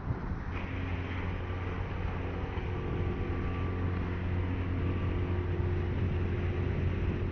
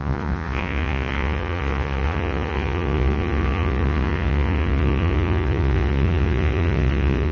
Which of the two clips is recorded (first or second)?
first